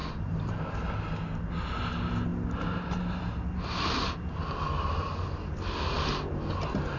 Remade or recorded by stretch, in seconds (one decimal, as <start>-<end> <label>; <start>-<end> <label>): 0.0-0.6 remade; 0.6-7.0 recorded